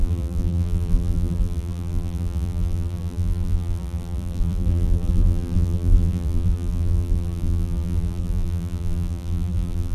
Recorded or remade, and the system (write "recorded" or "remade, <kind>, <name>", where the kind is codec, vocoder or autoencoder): remade, vocoder, BigVGAN v2